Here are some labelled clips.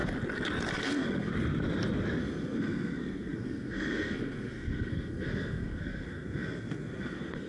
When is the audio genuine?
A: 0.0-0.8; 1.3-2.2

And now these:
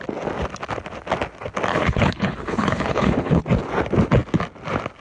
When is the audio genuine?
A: 0.0-1.7; 3.4-5.0

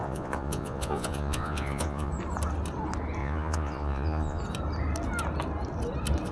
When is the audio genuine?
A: 2.1-3.2; 4.4-6.3